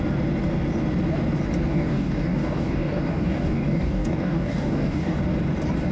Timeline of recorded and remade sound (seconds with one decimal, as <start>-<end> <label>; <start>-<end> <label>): 0.0-1.7 recorded; 1.7-5.2 remade; 5.2-5.9 recorded